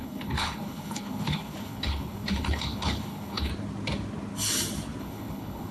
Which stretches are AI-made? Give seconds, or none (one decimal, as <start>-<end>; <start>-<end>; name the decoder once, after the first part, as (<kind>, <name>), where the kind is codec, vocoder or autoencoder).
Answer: 0.0-3.5 (codec, HILCodec); 5.0-5.7